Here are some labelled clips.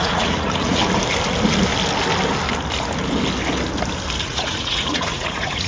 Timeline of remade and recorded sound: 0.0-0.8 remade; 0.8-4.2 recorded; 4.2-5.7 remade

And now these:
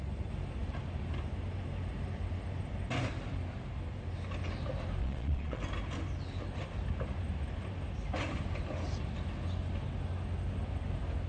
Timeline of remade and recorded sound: 0.0-5.0 recorded; 5.0-5.6 remade; 5.6-11.3 recorded

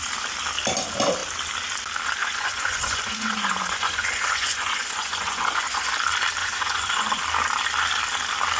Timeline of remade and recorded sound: 0.0-2.2 recorded; 2.2-5.9 remade; 5.9-6.4 recorded; 6.4-7.2 remade; 7.2-8.6 recorded

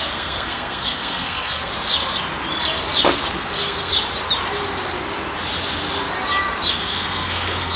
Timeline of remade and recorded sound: 0.0-1.7 remade; 1.7-3.3 recorded; 3.3-3.9 remade; 3.9-6.7 recorded; 6.7-7.8 remade

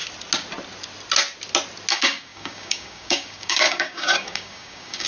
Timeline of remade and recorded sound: 0.0-1.9 recorded; 1.9-5.1 remade